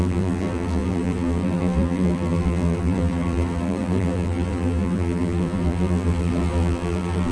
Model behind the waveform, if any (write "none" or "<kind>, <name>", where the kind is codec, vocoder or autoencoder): vocoder, BigVGAN v2